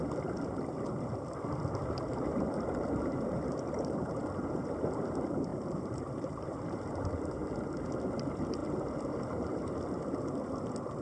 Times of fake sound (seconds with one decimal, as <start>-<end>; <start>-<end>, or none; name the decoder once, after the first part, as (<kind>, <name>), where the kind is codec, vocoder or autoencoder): 1.8-4.2 (vocoder, BigVGAN v2); 5.5-7.5